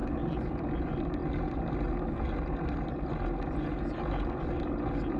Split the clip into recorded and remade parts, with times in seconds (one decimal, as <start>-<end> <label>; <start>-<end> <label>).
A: 0.0-5.2 recorded